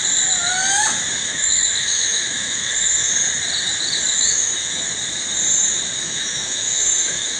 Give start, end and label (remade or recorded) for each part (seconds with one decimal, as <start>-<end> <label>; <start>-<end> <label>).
0.0-1.2 recorded; 1.2-3.1 remade; 3.1-4.1 recorded; 4.1-4.8 remade; 4.8-6.0 recorded; 6.0-7.4 remade

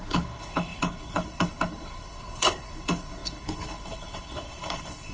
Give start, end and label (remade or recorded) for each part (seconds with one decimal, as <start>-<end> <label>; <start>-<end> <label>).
0.0-5.1 remade